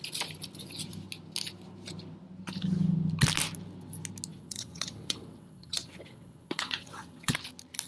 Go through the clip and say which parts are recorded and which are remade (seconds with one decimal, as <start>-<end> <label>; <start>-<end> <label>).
0.0-4.3 recorded; 4.3-7.3 remade; 7.3-7.9 recorded